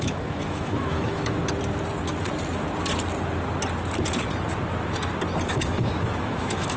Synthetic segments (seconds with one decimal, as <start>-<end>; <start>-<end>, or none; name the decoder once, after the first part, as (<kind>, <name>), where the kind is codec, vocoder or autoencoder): 0.0-1.4 (autoencoder, DAC-VAE); 5.5-6.8